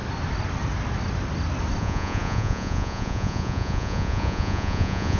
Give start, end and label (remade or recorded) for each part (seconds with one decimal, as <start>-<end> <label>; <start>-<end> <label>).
0.0-1.8 recorded; 1.8-5.2 remade